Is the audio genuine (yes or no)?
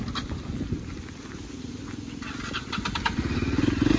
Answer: yes